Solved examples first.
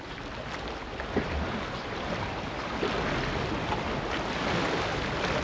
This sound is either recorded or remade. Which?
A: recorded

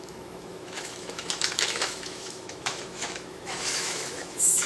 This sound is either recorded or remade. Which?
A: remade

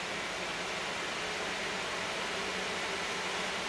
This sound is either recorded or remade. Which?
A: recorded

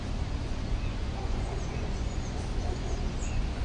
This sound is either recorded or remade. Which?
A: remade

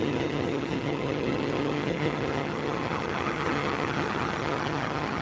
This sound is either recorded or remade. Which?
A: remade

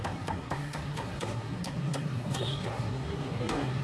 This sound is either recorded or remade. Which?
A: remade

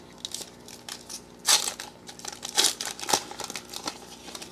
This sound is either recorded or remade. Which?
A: recorded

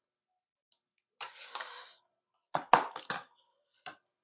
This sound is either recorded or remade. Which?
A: recorded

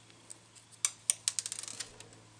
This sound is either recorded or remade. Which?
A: recorded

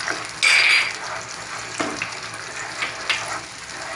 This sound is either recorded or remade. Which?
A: recorded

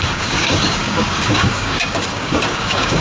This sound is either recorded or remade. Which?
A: remade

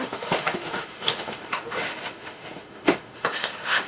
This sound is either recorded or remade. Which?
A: remade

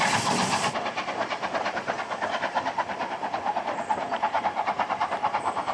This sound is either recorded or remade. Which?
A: recorded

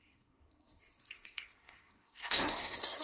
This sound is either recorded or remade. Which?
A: remade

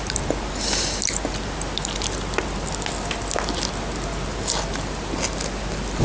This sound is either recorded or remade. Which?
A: recorded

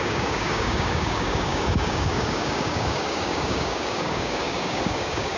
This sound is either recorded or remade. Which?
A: remade